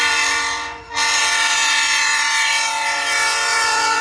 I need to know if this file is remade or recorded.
remade